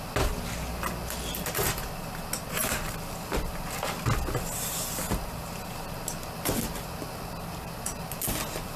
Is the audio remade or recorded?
recorded